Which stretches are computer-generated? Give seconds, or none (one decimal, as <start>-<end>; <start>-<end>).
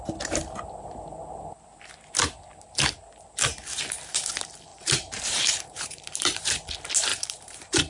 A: 4.7-6.4; 7.1-7.9